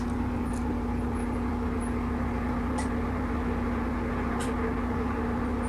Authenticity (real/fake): real